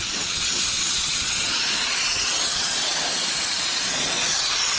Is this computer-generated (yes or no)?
yes